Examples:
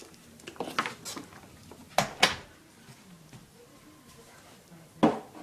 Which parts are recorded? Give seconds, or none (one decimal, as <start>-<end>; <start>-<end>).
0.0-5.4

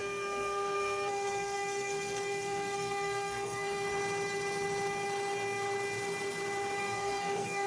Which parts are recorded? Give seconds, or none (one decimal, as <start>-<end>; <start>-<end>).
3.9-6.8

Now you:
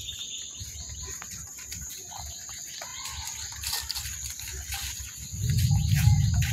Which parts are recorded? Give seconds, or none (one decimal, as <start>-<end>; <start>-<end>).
0.0-2.9; 5.0-6.5

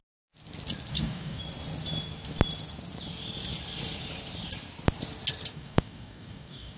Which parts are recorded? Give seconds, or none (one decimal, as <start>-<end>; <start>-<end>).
0.0-0.9; 1.4-5.5

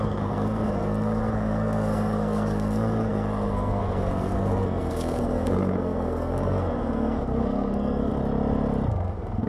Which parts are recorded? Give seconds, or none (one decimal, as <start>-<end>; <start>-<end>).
8.1-8.9

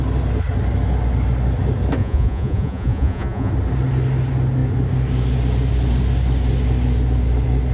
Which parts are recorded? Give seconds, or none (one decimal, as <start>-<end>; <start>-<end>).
0.0-2.0; 3.5-7.7